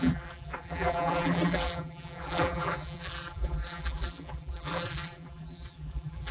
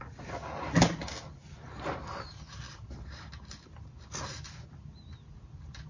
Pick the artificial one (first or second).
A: first